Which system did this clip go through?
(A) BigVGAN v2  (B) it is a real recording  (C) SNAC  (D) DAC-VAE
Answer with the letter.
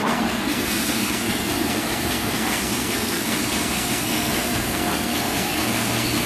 C